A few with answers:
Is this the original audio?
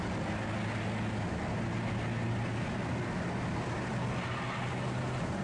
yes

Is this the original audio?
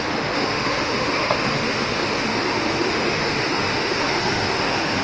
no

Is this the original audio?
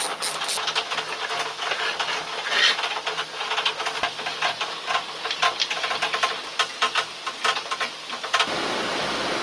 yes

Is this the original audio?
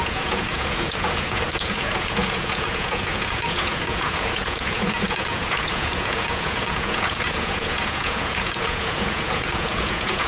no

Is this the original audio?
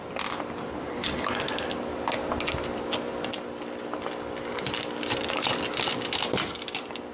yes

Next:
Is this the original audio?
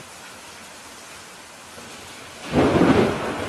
yes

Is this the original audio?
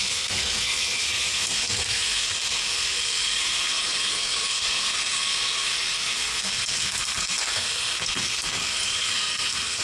no